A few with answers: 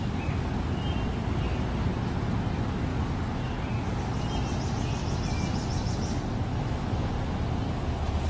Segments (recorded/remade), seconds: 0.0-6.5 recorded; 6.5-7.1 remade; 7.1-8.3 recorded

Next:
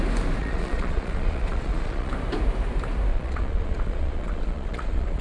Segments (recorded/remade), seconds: 0.0-0.4 recorded; 0.4-2.1 remade; 2.1-3.1 recorded; 3.1-5.2 remade

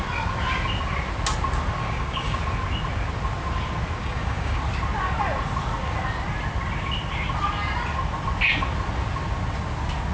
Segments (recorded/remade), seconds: 0.0-1.8 recorded; 1.8-2.4 remade; 2.4-4.0 recorded; 4.0-4.6 remade; 4.6-10.1 recorded

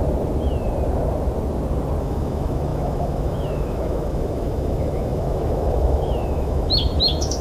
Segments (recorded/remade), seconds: 0.0-2.0 recorded; 2.0-7.4 remade

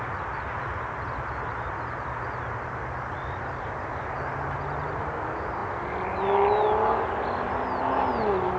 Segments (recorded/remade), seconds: 0.0-8.6 recorded